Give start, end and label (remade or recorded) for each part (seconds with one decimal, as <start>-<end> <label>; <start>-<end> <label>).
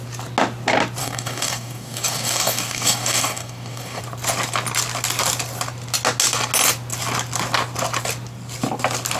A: 0.0-1.0 recorded; 1.0-4.0 remade; 4.0-9.2 recorded